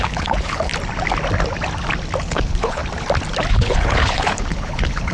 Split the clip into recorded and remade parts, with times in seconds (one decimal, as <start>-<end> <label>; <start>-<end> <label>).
0.0-0.7 remade; 0.7-2.2 recorded; 2.2-2.8 remade; 2.8-3.5 recorded; 3.5-5.1 remade